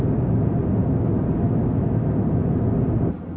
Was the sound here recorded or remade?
recorded